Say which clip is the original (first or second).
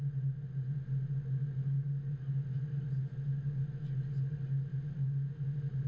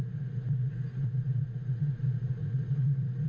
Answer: first